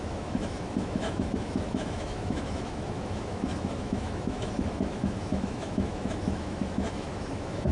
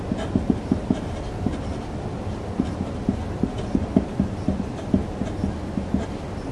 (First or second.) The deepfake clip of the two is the first